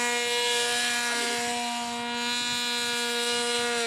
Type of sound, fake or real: real